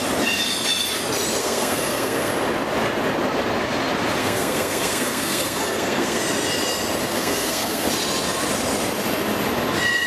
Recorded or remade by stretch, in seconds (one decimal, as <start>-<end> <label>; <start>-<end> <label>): 0.0-1.4 recorded; 1.4-2.3 remade; 2.3-4.2 recorded; 4.2-6.2 remade; 6.2-7.1 recorded; 7.1-7.9 remade; 7.9-10.1 recorded